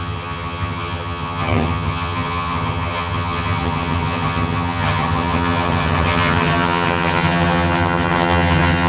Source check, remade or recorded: remade